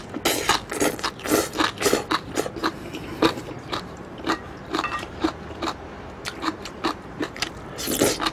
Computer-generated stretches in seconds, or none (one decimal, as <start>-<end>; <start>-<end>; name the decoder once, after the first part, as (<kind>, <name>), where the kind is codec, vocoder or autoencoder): 2.6-7.5 (vocoder, BigVGAN v2)